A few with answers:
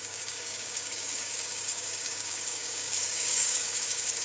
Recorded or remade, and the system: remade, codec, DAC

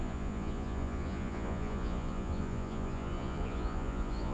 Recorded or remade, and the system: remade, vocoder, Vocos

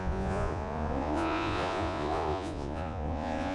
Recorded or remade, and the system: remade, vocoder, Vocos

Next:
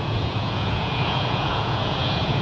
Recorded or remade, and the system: remade, vocoder, Vocos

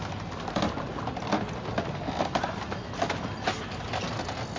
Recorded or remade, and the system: recorded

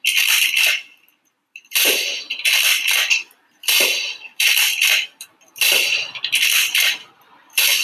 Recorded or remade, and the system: remade, vocoder, BigVGAN v2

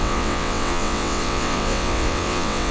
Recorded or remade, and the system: remade, vocoder, WaveNeXt